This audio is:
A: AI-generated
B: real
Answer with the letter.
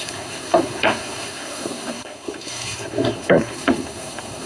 A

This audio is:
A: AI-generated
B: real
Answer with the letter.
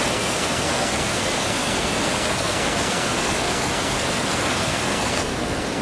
A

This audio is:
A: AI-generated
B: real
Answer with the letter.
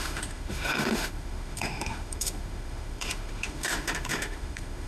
A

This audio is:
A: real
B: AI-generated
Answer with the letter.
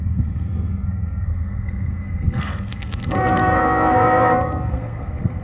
B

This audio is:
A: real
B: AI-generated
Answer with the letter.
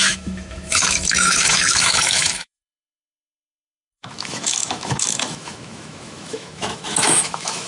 B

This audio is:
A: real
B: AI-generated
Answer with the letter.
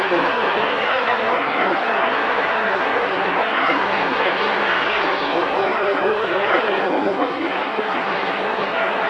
B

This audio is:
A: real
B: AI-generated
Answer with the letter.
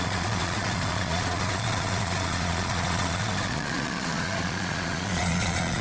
B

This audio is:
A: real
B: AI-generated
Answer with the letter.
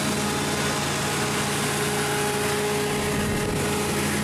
A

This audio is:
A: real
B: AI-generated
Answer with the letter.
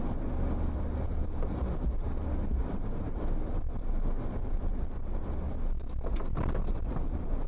A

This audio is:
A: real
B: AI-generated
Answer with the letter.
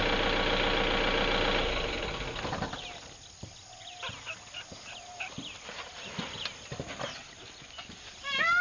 A